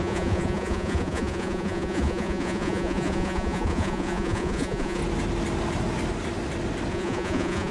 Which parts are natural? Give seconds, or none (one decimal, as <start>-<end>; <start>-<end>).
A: 5.0-6.9